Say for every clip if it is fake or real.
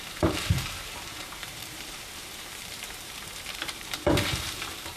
fake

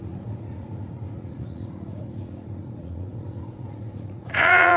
fake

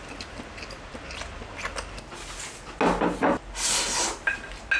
real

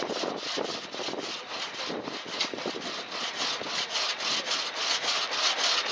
real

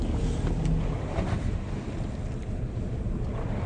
real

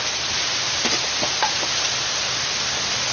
real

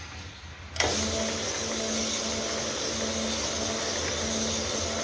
real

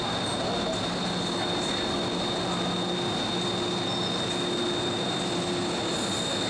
real